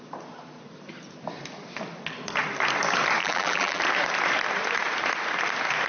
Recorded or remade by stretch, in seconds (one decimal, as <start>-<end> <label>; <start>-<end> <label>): 0.0-3.2 recorded; 3.2-3.8 remade; 3.8-5.9 recorded